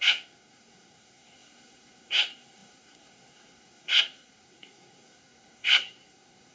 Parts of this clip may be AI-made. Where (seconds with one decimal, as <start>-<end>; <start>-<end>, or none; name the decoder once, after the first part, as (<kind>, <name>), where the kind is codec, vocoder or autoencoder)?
0.0-6.5 (codec, SNAC)